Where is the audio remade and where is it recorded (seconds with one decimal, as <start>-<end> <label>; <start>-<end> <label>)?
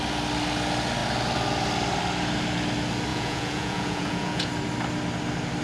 0.0-3.1 recorded; 3.1-4.5 remade; 4.5-5.6 recorded